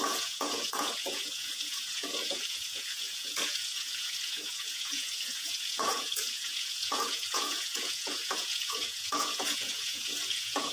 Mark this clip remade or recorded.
remade